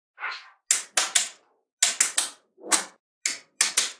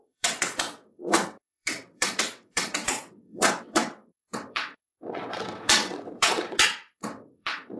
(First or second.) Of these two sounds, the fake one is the second